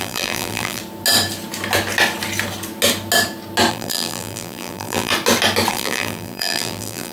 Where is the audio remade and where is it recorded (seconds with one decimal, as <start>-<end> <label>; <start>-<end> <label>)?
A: 0.0-0.8 remade; 0.8-3.7 recorded; 3.7-5.1 remade; 5.1-5.7 recorded; 5.7-7.1 remade